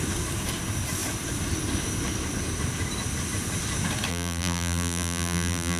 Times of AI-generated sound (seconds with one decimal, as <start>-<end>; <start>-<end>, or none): 4.1-5.8